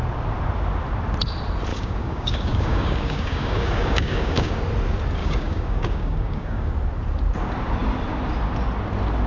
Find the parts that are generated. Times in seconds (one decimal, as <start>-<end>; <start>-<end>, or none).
1.7-4.6; 5.2-6.7